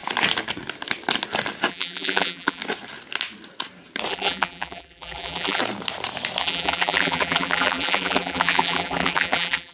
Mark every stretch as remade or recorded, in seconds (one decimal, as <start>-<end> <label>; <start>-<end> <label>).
0.0-1.7 recorded; 1.7-2.6 remade; 2.6-4.1 recorded; 4.1-5.6 remade; 5.6-6.4 recorded; 6.4-9.7 remade